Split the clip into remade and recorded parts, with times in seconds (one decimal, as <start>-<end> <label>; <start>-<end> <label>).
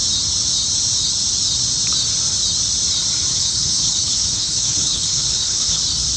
0.0-3.3 recorded; 3.3-5.8 remade; 5.8-6.2 recorded